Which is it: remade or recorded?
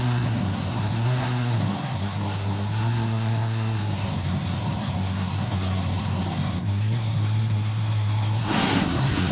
remade